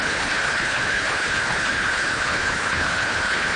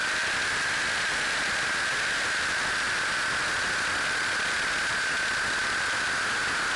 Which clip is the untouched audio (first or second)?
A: second